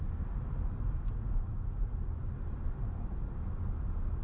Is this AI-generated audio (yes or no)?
no